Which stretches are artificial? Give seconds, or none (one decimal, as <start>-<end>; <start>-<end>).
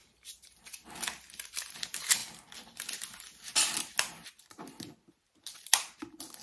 none